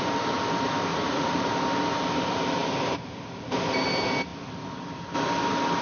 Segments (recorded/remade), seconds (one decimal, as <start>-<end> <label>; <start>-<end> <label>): 0.0-0.9 recorded; 0.9-1.5 remade; 1.5-5.8 recorded